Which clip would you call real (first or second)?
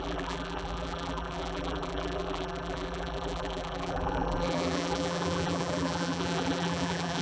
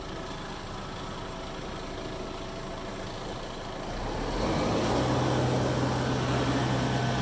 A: second